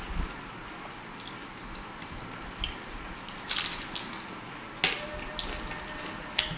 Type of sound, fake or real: real